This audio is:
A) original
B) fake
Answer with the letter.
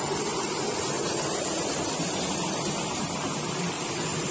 A